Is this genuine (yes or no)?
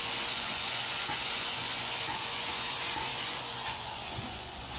no